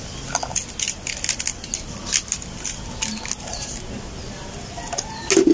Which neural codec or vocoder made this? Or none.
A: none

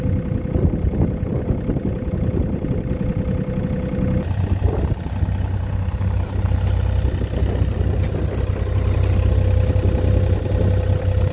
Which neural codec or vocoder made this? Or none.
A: none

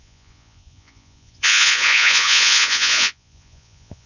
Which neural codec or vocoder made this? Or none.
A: vocoder, Vocos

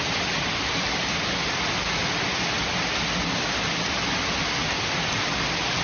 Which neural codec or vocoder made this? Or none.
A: none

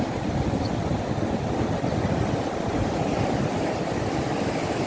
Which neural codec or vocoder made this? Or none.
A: none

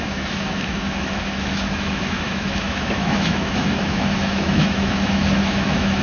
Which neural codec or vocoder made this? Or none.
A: autoencoder, DAC-VAE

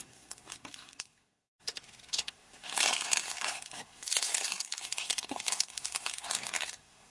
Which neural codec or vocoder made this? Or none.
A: codec, SNAC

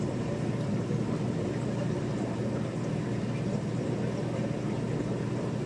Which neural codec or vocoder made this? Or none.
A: none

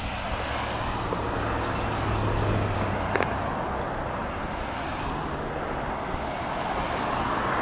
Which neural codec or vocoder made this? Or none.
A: none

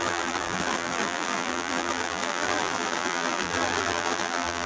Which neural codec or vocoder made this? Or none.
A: vocoder, BigVGAN v2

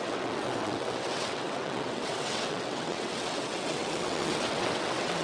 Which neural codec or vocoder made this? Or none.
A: vocoder, WaveNeXt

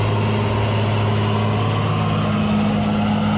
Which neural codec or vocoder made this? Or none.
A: none